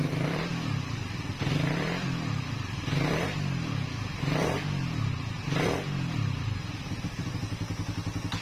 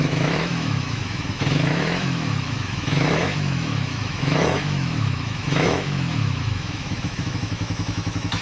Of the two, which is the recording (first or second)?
first